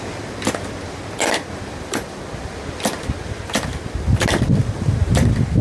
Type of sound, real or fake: real